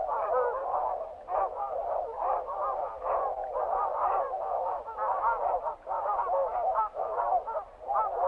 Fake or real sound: fake